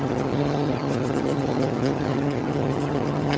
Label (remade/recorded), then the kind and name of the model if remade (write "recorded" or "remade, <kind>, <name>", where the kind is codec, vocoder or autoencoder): remade, vocoder, HiFi-GAN